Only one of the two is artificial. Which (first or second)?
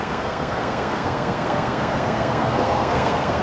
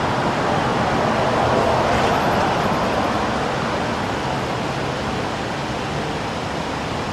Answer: first